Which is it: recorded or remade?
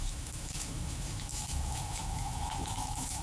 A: remade